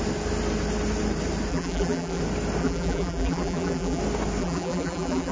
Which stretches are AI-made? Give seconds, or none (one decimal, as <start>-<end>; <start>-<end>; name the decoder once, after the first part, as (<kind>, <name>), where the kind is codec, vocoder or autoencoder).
1.5-2.2 (vocoder, BigVGAN v2); 2.6-4.0; 4.4-5.3